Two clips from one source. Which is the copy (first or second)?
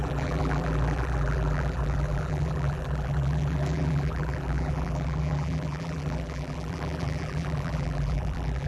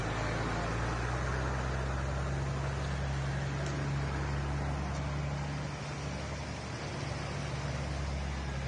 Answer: first